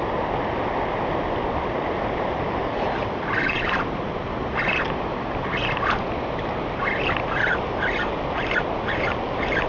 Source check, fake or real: real